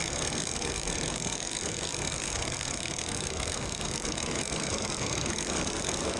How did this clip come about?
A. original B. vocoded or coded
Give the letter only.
B